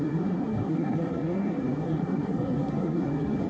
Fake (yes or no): yes